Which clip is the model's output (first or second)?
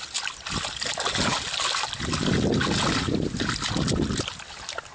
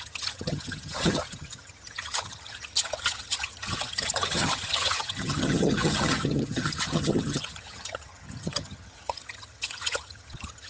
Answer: second